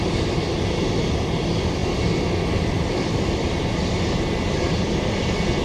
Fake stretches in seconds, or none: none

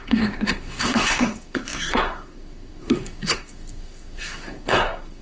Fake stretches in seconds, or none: 0.0-5.2 (codec, SNAC)

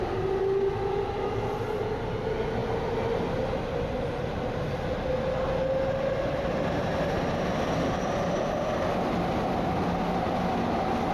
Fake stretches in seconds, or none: none

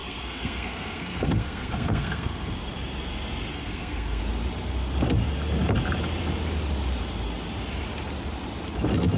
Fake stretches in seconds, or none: 0.0-2.5 (codec, SNAC); 3.5-4.2

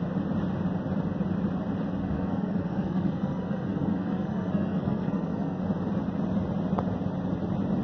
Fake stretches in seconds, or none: 2.0-5.6 (codec, SNAC)